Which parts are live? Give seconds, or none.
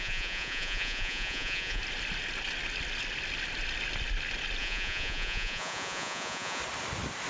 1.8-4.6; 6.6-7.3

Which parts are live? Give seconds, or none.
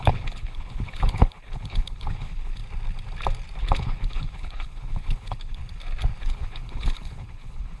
2.6-3.6; 5.6-6.2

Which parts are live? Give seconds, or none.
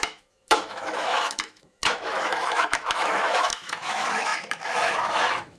none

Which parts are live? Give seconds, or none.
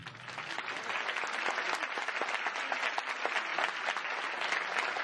0.0-5.0